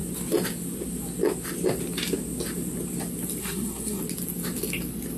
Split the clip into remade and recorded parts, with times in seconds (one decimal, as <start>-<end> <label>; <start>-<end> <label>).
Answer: 0.0-3.4 recorded; 3.4-4.0 remade; 4.0-5.2 recorded